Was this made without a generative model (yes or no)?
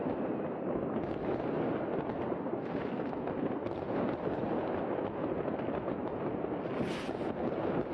yes